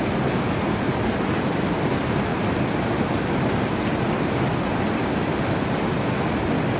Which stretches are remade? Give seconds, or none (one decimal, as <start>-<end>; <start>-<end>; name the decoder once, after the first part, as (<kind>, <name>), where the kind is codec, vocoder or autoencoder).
none